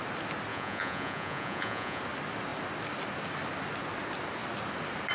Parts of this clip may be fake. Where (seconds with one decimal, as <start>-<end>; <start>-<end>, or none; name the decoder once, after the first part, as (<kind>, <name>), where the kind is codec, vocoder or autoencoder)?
0.5-2.0 (vocoder, Vocos)